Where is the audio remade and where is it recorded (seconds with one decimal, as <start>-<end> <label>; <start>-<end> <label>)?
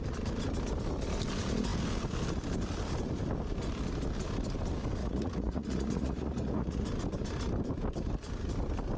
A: 0.0-5.0 recorded; 5.0-6.8 remade; 6.8-9.0 recorded